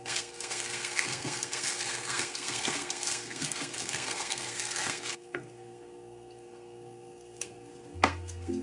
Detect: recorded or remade remade